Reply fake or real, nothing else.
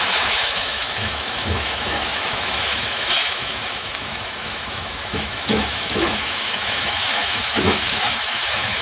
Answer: fake